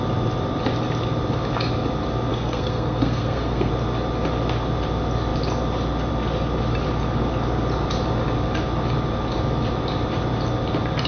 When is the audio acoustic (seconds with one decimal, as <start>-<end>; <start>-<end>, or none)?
0.0-2.3; 3.7-11.1